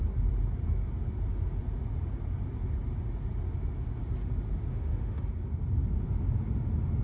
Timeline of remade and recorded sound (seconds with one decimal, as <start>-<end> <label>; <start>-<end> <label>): 0.0-4.7 recorded; 4.7-5.3 remade; 5.3-7.0 recorded